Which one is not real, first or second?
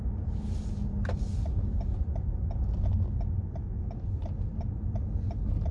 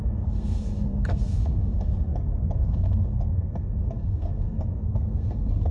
second